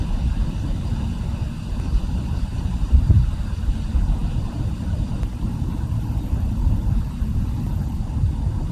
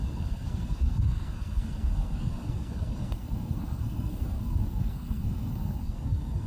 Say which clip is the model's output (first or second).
second